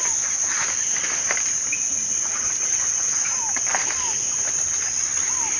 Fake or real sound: real